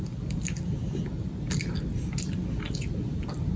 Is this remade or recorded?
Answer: recorded